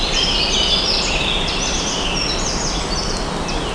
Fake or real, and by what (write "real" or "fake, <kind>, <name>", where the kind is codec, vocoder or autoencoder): real